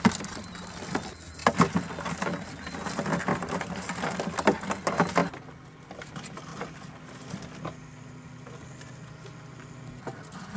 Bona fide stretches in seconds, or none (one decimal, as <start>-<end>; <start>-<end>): 0.0-10.6